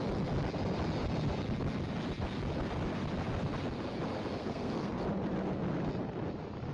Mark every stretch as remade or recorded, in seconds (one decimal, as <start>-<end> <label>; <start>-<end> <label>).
0.0-4.4 recorded; 4.4-5.0 remade; 5.0-6.7 recorded